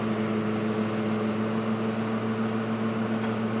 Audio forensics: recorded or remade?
recorded